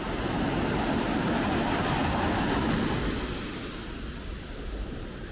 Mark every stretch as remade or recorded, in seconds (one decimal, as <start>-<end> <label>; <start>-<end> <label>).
0.0-5.3 recorded